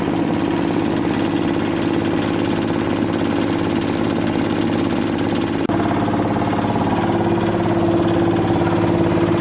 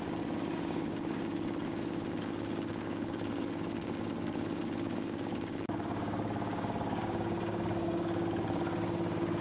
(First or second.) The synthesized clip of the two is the second